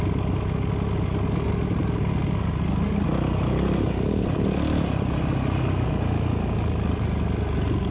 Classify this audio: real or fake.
real